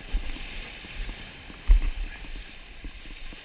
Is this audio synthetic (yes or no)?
yes